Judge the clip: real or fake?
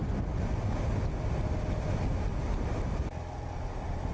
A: real